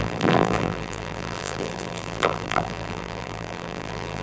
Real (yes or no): no